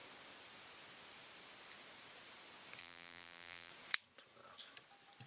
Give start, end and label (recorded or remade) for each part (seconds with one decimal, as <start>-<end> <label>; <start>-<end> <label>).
0.0-2.8 recorded; 2.8-3.7 remade; 3.7-5.3 recorded